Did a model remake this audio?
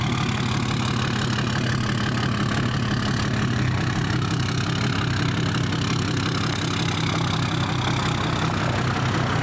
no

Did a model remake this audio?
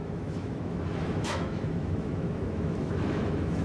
yes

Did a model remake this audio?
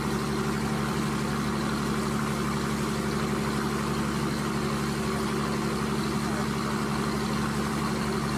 no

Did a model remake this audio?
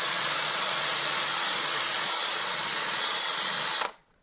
yes